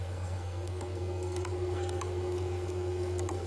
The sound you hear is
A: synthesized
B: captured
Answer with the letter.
A